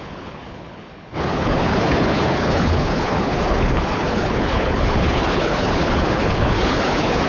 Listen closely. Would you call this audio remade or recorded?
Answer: remade